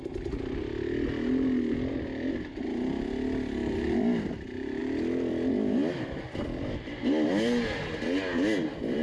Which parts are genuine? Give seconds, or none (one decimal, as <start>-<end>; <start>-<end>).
0.0-4.8; 7.0-9.0